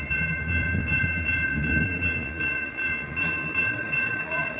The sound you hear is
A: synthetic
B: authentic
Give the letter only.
A